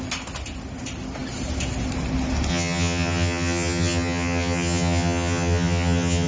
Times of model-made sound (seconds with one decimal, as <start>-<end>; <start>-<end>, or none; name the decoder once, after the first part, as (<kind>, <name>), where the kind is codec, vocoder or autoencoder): 2.5-6.3 (vocoder, HiFi-GAN)